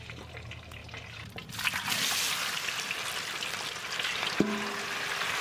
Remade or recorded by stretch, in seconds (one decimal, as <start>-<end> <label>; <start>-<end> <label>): 0.0-5.4 recorded